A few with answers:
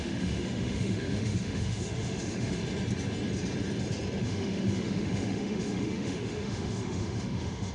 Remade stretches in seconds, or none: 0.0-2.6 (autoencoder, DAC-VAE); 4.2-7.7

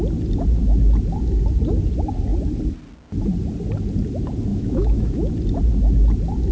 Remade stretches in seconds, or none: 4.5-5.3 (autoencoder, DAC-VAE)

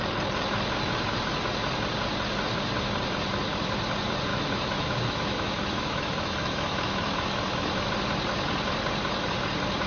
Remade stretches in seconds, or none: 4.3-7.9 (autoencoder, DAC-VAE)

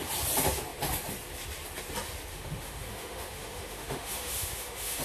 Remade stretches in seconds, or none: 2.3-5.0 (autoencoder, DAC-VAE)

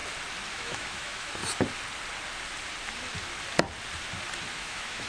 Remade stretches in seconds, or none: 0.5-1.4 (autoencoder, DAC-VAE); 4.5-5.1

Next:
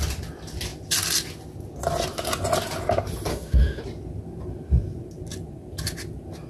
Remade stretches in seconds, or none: 3.3-3.8 (autoencoder, DAC-VAE)